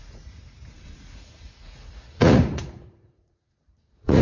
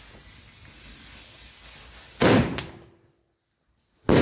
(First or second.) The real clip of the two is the second